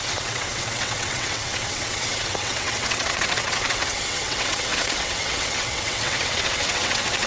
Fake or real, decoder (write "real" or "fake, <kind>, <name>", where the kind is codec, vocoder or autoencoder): fake, vocoder, WaveNeXt